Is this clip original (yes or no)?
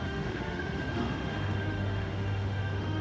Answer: no